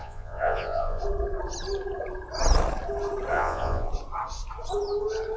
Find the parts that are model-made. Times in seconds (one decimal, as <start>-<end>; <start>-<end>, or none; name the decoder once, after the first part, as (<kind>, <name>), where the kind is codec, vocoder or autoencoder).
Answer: 0.0-1.0 (vocoder, Vocos); 3.3-3.9